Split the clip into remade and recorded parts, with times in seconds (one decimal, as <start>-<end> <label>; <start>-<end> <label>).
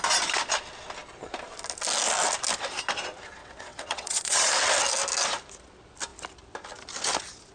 0.0-3.4 recorded; 3.4-4.5 remade; 4.5-7.5 recorded